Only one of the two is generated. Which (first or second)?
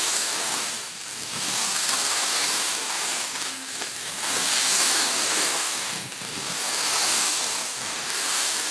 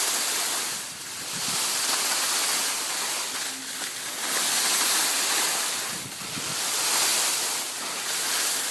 first